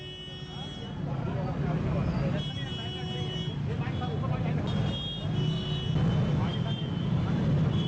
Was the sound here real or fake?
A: real